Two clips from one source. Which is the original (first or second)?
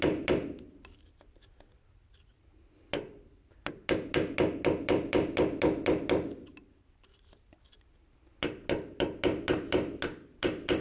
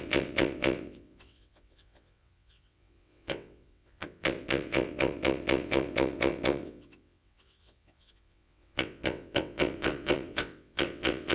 first